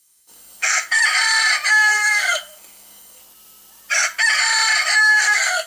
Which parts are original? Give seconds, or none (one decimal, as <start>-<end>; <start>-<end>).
1.0-1.7; 3.2-5.0